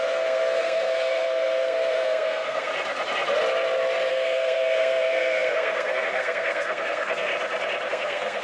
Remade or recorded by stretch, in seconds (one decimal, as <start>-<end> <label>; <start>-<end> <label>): 0.0-2.7 remade; 2.7-4.1 recorded; 4.1-7.3 remade; 7.3-7.9 recorded; 7.9-8.4 remade